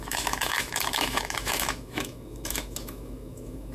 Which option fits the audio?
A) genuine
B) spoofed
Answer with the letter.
B